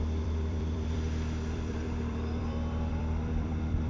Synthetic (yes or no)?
yes